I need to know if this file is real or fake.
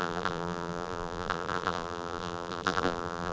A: fake